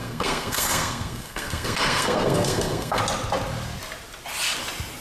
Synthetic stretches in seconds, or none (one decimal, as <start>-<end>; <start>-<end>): 0.0-3.0